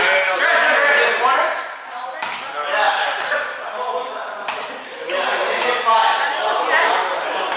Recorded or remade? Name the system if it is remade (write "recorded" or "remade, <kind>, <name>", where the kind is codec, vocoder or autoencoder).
recorded